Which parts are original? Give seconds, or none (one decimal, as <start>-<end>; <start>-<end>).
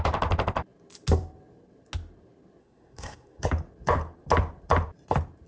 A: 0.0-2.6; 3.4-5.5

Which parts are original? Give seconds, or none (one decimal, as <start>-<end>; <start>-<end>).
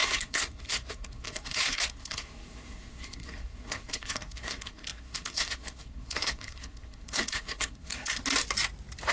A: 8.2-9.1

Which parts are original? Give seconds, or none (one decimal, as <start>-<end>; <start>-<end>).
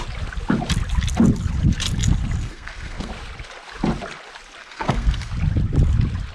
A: 0.0-2.4; 3.1-4.6; 5.3-6.3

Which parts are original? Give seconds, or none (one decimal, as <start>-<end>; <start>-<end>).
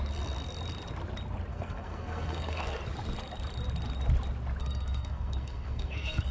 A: 0.0-1.5; 2.8-4.6